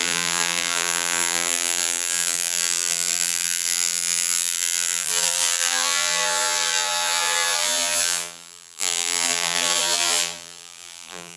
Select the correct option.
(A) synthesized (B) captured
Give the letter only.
A